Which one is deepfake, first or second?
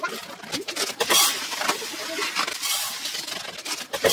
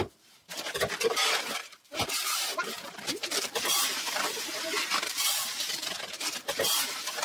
second